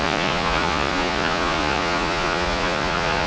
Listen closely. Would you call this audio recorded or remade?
remade